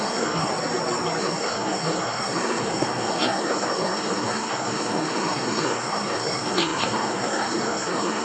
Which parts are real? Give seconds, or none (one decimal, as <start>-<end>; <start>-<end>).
0.5-1.2